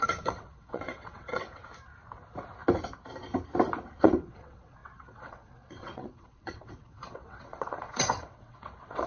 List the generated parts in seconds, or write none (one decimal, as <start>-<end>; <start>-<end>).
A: 0.0-1.6; 4.0-9.1